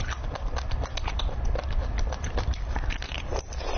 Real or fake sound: real